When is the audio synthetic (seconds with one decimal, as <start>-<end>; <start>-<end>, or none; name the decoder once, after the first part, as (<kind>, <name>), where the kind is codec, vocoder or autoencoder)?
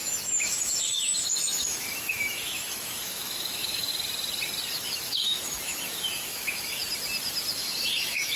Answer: 0.0-3.9 (autoencoder, DAC-VAE); 4.7-6.8; 7.5-8.4